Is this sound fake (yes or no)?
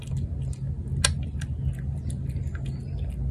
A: no